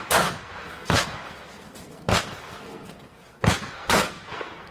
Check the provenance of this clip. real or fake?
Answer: fake